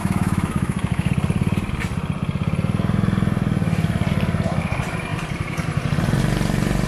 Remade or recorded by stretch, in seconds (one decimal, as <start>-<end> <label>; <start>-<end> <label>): 0.0-1.1 remade; 1.1-6.9 recorded